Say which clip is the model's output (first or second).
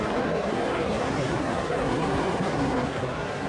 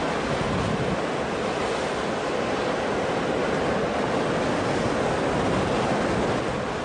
first